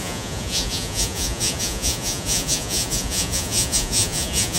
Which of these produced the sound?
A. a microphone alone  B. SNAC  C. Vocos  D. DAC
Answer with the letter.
C